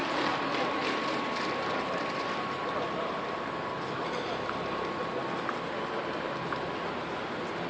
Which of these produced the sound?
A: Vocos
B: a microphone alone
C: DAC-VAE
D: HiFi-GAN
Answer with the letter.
B